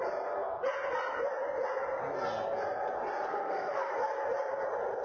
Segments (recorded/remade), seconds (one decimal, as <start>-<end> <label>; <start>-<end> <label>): 0.0-3.3 recorded; 3.3-3.9 remade; 3.9-5.0 recorded